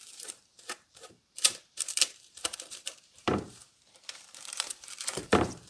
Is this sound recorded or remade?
remade